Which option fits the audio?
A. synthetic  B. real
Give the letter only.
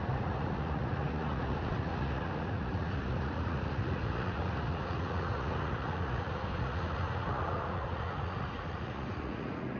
A